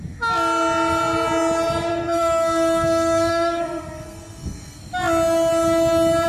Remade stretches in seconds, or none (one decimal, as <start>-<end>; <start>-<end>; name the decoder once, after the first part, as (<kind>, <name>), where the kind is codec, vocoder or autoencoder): 1.9-4.8 (codec, SNAC)